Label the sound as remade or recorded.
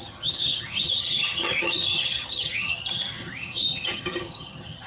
remade